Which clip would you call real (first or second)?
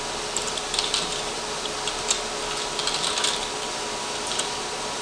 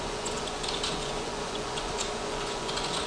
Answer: first